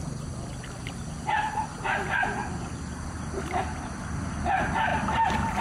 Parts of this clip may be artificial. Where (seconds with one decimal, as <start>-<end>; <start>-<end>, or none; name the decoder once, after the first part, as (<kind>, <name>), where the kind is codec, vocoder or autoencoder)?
3.6-4.3 (vocoder, BigVGAN v2)

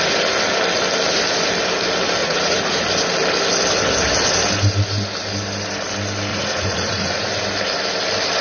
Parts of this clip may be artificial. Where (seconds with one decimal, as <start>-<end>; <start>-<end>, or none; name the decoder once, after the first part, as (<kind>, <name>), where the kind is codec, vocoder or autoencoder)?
2.2-2.8 (vocoder, Vocos); 6.3-7.3

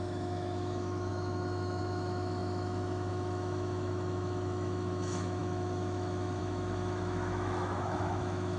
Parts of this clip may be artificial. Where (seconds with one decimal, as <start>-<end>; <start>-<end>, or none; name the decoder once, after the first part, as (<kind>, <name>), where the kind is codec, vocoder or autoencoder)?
0.0-8.6 (autoencoder, DAC-VAE)

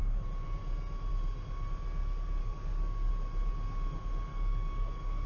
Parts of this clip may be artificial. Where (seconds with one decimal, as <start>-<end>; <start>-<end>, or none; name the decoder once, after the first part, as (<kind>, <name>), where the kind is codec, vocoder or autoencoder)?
2.4-3.1 (codec, DAC); 4.3-5.3

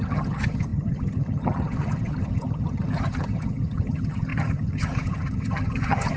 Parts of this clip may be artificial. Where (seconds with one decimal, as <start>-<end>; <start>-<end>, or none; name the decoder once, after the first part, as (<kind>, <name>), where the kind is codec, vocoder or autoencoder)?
0.0-6.2 (vocoder, HiFi-GAN)

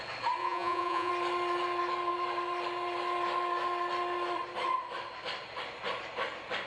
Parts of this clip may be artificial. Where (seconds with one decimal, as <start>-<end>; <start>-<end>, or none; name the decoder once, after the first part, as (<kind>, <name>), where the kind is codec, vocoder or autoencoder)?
0.4-1.1 (vocoder, Vocos)

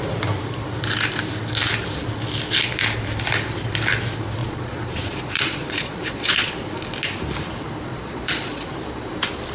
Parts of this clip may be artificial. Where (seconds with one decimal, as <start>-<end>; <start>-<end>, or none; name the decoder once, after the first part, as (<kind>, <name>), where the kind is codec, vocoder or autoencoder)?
4.4-6.5 (vocoder, Vocos); 7.9-8.7